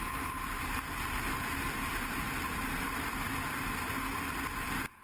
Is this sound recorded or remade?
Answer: recorded